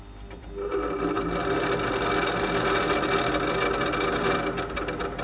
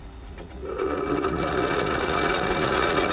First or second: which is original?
first